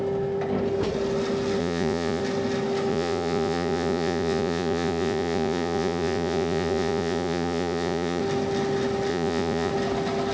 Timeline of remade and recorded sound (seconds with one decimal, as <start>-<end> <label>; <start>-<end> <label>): 0.0-1.6 recorded; 1.6-2.2 remade; 2.2-2.9 recorded; 2.9-8.2 remade; 8.2-9.1 recorded; 9.1-9.7 remade; 9.7-10.3 recorded